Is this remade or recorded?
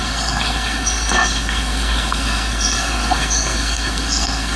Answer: remade